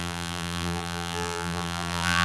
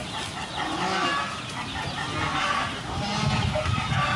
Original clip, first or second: second